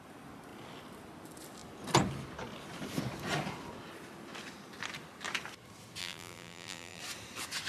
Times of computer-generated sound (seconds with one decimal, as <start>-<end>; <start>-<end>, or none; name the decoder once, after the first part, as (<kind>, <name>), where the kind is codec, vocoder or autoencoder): 6.0-7.0 (vocoder, BigVGAN v2)